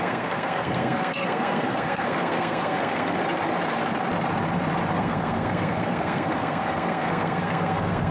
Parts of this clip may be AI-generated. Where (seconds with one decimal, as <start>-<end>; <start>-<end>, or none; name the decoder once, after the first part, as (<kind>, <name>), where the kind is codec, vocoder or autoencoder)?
0.0-3.2 (codec, SNAC); 4.9-8.1